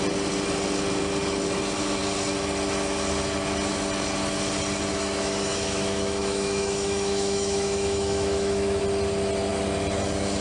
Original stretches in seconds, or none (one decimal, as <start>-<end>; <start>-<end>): 0.0-4.9; 8.8-10.4